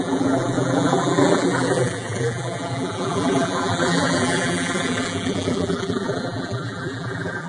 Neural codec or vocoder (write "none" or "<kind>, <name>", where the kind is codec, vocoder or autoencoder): vocoder, BigVGAN v2